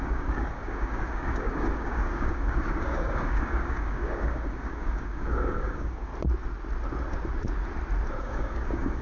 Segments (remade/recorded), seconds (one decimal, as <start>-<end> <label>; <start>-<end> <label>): 0.0-6.1 remade; 6.1-8.2 recorded; 8.2-9.0 remade